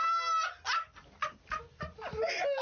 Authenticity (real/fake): real